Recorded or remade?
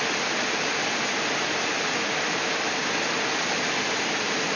recorded